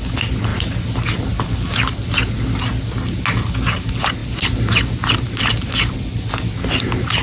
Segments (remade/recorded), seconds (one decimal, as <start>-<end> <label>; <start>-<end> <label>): 0.0-7.2 recorded